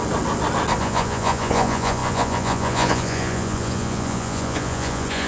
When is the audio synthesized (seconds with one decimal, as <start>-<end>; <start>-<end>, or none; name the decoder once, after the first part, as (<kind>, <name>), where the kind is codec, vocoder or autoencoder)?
0.8-5.3 (vocoder, Vocos)